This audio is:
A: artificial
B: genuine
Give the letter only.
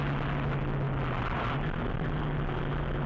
B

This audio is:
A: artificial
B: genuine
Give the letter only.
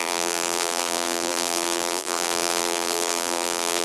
A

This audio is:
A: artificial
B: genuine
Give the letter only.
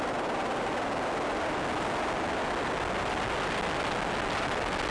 B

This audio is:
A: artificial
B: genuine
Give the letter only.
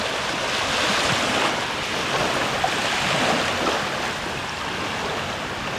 B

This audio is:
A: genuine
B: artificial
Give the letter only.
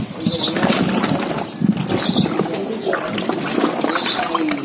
A